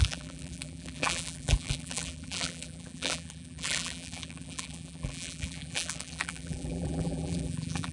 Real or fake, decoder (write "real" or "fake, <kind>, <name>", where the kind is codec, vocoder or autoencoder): fake, vocoder, BigVGAN v2